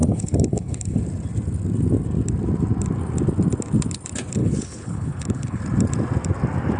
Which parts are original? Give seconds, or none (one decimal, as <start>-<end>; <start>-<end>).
1.0-4.4; 5.6-6.8